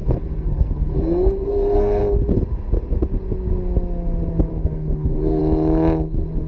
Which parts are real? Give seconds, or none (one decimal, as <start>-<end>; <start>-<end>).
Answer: 2.0-4.5; 5.4-6.5